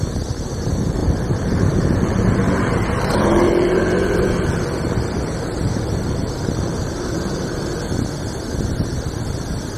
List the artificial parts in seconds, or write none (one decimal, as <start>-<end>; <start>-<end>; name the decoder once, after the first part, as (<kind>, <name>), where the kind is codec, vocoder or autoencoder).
0.0-7.7 (vocoder, BigVGAN v2)